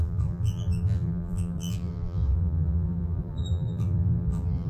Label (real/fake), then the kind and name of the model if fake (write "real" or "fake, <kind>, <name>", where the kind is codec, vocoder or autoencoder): fake, vocoder, BigVGAN v2